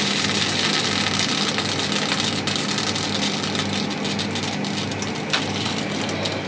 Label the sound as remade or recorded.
recorded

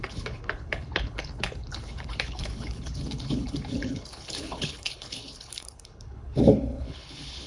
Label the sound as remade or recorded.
remade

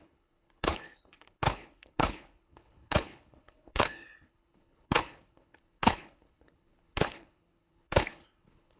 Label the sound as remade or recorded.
remade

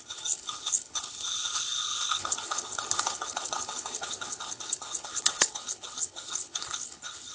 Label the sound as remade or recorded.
remade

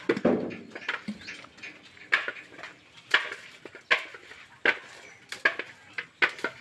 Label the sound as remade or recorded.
recorded